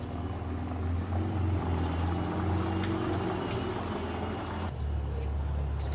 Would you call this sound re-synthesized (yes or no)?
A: no